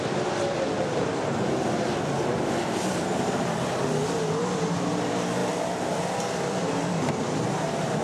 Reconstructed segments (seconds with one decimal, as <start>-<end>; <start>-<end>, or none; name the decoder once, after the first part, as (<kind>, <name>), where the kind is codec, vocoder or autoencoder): 5.4-8.0 (vocoder, BigVGAN v2)